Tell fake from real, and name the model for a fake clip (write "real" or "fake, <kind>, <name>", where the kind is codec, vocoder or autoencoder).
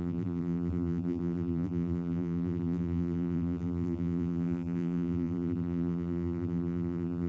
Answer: fake, vocoder, BigVGAN v2